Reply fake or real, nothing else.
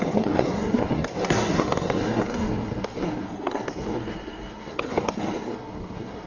fake